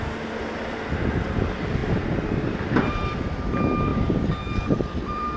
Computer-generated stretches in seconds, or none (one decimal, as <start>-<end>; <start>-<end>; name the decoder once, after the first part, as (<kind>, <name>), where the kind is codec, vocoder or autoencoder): 3.9-5.4 (vocoder, BigVGAN v2)